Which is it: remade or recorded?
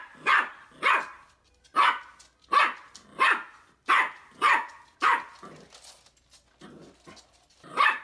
recorded